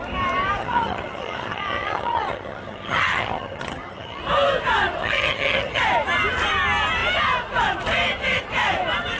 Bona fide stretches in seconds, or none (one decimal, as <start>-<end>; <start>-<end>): 0.0-0.6; 4.2-5.0; 5.8-9.2